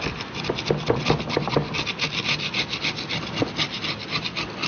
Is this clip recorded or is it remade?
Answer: recorded